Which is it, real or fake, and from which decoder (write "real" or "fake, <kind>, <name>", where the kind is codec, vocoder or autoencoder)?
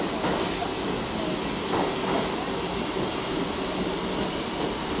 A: real